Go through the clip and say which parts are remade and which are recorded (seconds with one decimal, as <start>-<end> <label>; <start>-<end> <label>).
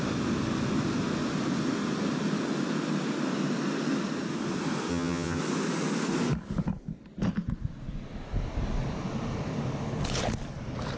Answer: 0.0-4.9 recorded; 4.9-5.4 remade; 5.4-11.0 recorded